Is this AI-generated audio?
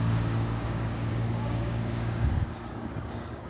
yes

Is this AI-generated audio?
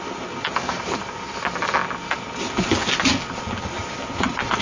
no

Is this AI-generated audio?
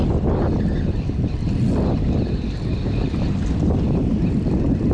no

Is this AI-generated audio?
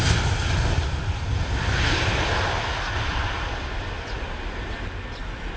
no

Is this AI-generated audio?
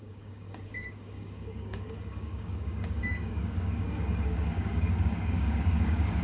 yes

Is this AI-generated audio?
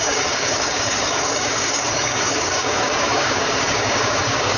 yes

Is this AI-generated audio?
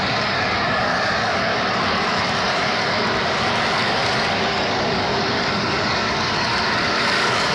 yes